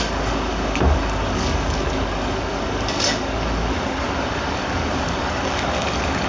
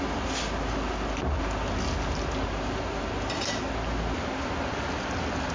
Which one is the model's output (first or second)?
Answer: first